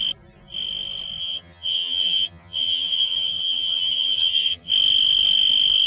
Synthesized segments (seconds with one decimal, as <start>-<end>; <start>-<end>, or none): 1.2-4.7